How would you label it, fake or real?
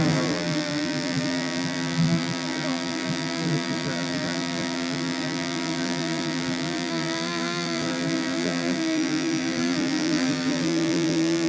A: fake